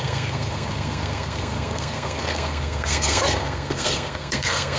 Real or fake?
fake